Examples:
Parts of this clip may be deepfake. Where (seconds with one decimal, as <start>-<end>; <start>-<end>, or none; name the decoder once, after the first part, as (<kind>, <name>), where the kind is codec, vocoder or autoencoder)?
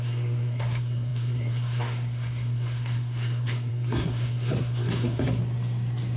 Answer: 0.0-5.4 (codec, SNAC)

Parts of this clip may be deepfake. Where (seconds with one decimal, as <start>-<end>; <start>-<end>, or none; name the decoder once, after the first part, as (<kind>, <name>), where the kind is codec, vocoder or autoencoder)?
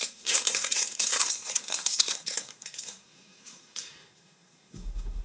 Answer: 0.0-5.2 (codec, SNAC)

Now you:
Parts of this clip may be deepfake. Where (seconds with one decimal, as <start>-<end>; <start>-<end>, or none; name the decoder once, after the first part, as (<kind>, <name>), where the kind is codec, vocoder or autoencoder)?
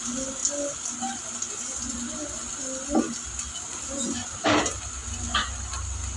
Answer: none